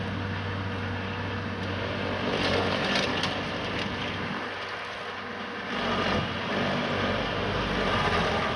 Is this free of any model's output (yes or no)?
yes